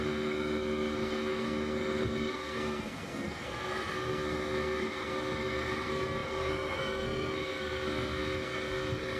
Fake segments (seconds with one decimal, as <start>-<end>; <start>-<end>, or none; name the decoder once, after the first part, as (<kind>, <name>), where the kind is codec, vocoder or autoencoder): 0.0-9.2 (codec, SNAC)

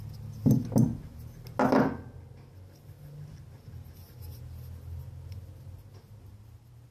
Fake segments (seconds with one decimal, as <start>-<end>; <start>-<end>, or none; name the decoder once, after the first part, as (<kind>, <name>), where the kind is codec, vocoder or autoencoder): none

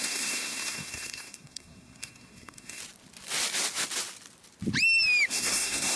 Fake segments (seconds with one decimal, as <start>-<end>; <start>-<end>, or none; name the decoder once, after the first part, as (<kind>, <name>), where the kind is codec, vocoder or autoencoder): 0.0-2.8 (codec, SNAC); 5.3-5.9